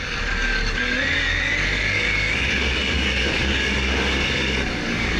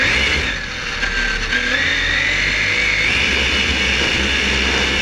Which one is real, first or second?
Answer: second